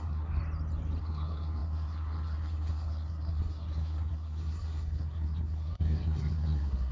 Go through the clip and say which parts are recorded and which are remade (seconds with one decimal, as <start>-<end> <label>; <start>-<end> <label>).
0.0-0.4 remade; 0.4-1.0 recorded; 1.0-6.9 remade